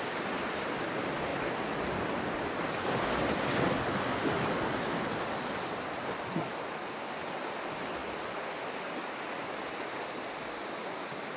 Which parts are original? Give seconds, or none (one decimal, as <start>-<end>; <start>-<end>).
0.0-11.4